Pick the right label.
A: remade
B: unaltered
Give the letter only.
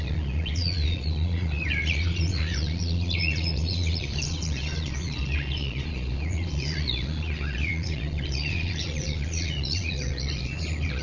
A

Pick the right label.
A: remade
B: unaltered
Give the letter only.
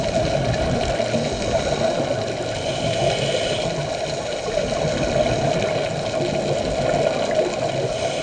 B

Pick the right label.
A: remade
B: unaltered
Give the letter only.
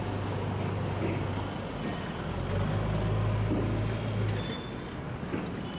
B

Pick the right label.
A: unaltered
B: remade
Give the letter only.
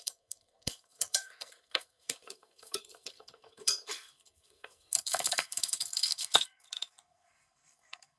B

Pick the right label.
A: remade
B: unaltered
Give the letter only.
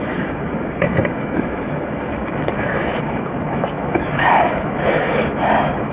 A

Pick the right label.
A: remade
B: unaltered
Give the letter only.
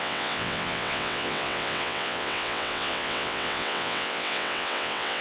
A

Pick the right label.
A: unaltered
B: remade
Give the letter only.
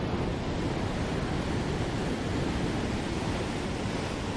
A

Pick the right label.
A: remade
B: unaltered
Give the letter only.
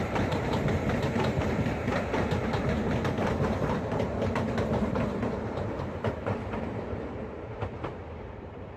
A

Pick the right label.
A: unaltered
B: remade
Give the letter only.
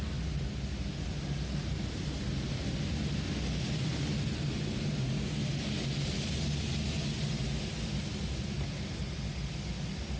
A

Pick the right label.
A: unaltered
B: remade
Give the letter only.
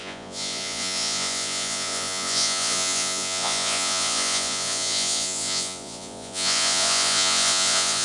B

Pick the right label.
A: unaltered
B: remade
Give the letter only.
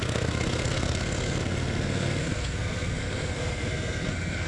B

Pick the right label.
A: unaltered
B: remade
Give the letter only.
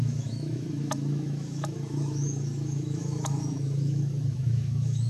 B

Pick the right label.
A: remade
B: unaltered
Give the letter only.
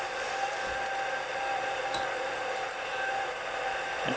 A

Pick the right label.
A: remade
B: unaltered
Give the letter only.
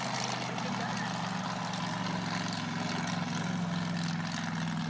B